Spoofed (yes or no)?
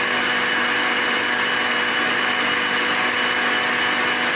no